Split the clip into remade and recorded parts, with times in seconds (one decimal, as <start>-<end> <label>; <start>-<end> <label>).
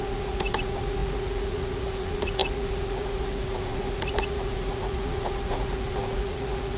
0.0-6.8 remade